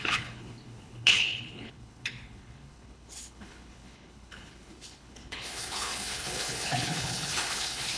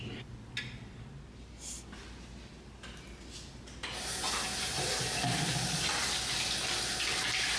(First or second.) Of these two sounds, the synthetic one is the first